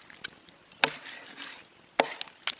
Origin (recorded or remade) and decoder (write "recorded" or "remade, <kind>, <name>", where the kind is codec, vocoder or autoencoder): recorded